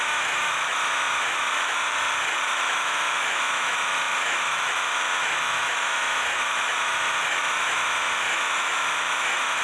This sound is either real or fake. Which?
fake